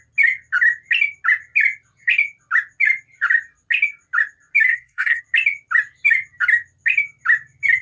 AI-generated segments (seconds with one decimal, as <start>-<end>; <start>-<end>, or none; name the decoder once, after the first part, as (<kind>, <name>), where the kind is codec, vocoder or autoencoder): 4.7-5.2 (codec, SNAC)